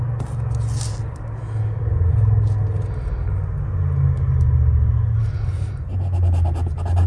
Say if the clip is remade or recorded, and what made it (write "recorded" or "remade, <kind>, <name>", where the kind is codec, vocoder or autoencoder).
recorded